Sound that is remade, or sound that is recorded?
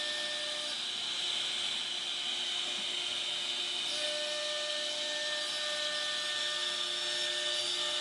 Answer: recorded